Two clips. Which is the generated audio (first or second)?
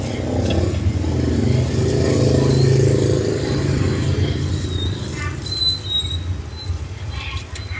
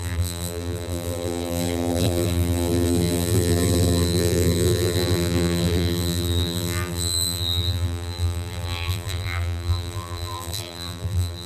second